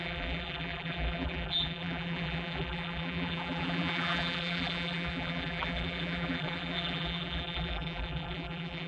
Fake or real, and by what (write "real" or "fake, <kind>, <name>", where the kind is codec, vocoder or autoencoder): fake, vocoder, BigVGAN v2